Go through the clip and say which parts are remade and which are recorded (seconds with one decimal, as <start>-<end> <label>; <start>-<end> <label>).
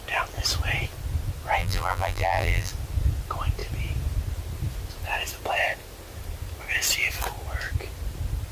0.0-1.6 recorded; 1.6-2.7 remade; 2.7-8.5 recorded